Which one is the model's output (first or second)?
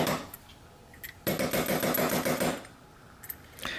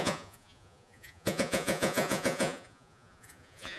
second